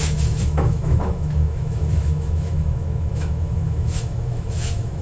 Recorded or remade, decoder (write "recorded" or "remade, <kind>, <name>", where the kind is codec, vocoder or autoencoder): remade, autoencoder, DAC-VAE